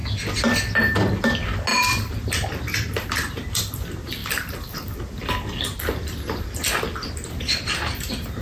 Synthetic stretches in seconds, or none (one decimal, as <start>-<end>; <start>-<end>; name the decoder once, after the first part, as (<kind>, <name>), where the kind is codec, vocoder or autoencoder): 1.7-3.6 (vocoder, BigVGAN v2); 4.2-8.4